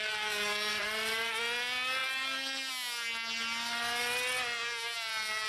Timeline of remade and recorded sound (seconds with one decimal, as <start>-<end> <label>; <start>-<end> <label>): 0.0-0.7 recorded; 0.7-1.4 remade; 1.4-5.5 recorded